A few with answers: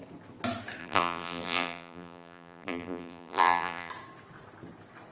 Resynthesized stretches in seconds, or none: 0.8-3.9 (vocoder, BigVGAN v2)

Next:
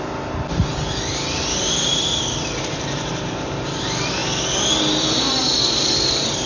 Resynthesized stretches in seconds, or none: 1.9-3.1 (vocoder, BigVGAN v2)

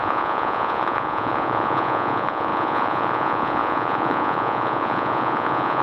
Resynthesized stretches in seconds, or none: 0.0-5.8 (vocoder, Vocos)

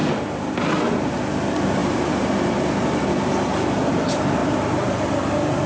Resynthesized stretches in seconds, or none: 0.0-0.6 (vocoder, BigVGAN v2); 1.8-3.1; 4.4-5.0